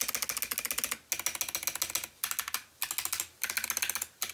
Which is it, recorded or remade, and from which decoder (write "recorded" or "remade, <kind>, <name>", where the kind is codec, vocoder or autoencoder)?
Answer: recorded